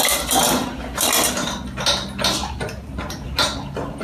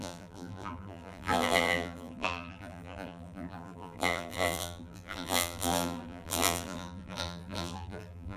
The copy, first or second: second